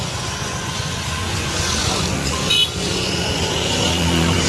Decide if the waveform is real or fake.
fake